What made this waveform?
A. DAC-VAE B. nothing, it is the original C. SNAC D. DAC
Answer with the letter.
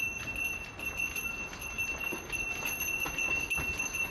B